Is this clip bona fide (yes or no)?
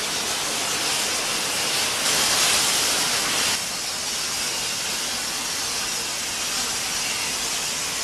yes